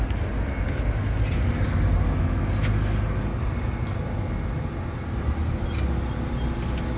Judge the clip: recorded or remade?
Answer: recorded